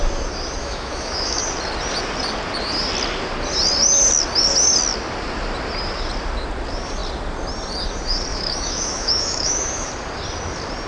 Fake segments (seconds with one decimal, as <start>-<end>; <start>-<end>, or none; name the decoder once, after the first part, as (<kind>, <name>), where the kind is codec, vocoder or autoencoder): 0.6-1.4 (autoencoder, DAC-VAE); 8.3-9.9